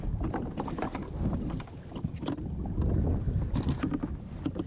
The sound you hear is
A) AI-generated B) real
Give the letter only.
A